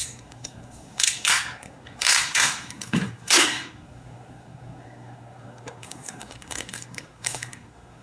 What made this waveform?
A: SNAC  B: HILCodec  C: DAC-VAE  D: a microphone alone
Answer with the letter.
A